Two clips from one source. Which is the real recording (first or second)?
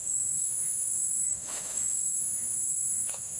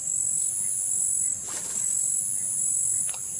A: second